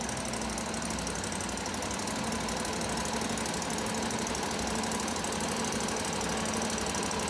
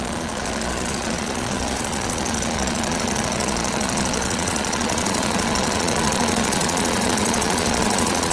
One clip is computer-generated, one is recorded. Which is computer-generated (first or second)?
second